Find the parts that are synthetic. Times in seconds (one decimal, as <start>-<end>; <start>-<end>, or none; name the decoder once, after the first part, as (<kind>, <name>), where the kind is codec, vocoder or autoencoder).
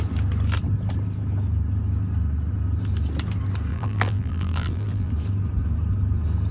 3.7-5.1 (vocoder, BigVGAN v2)